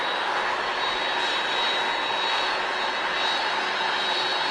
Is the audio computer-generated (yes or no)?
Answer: no